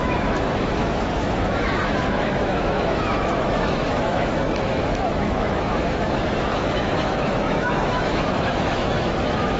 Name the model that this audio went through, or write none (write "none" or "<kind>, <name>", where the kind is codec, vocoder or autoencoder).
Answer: autoencoder, DAC-VAE